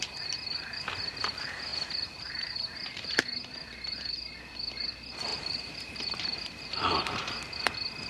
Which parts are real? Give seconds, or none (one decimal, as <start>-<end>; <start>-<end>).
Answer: 0.0-1.7; 3.2-5.3; 6.8-8.1